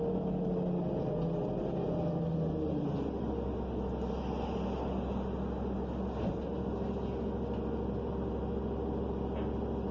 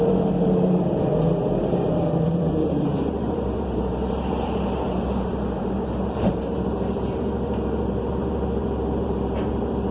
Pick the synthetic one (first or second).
second